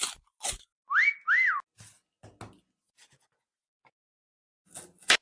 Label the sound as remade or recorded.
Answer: recorded